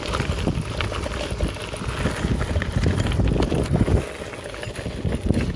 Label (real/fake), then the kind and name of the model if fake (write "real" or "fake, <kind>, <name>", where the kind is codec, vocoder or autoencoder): real